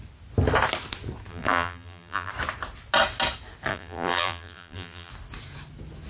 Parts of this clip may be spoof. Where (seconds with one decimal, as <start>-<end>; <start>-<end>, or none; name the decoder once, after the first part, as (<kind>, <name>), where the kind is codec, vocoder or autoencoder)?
1.3-2.3 (vocoder, BigVGAN v2); 3.7-5.1